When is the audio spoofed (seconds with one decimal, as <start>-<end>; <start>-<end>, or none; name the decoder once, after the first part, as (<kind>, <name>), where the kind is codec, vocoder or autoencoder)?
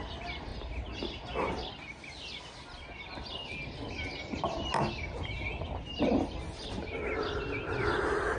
none